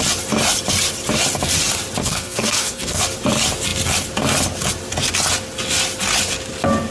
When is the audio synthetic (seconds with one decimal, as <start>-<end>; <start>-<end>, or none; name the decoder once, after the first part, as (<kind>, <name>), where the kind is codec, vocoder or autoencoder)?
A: 2.0-3.0 (codec, SNAC)